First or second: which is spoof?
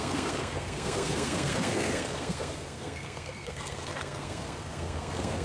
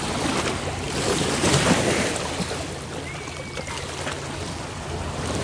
first